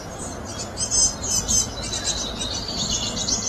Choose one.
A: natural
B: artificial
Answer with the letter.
A